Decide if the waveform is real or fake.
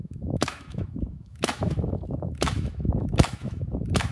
fake